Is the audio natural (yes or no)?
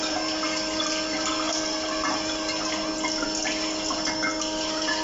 yes